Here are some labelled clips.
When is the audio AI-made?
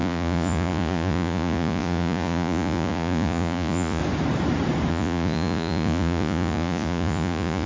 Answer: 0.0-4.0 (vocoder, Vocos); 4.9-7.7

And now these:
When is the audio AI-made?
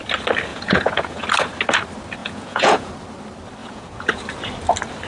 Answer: 0.5-1.2 (vocoder, Vocos); 2.2-2.9; 3.6-4.2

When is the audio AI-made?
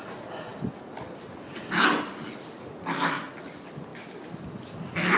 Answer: none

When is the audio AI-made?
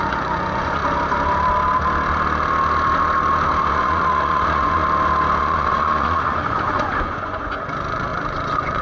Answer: 0.0-0.8 (vocoder, Vocos); 3.7-4.8; 5.4-8.8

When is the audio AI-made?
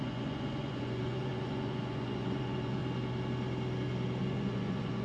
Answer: 0.0-2.8 (vocoder, Vocos); 4.2-5.0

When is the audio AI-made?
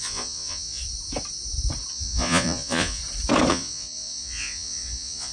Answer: 0.0-0.8 (vocoder, Vocos); 1.9-3.0; 3.5-5.3